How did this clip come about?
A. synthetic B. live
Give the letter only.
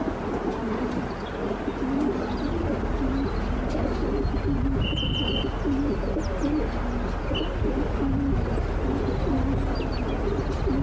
B